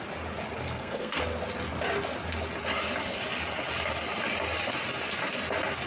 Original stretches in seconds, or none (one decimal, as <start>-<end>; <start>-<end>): 0.0-0.6; 1.2-5.9